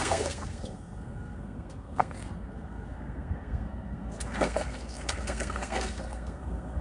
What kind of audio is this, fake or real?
fake